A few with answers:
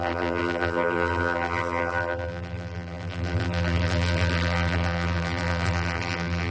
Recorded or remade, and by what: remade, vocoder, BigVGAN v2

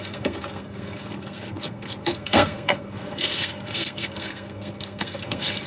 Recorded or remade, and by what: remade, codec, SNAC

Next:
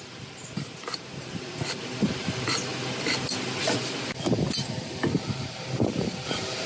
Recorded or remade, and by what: recorded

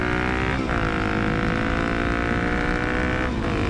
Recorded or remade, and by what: recorded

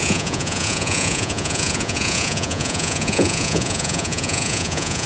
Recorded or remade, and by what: remade, vocoder, Vocos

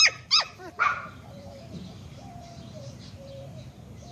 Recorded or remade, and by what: remade, vocoder, BigVGAN v2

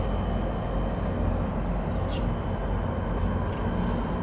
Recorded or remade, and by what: recorded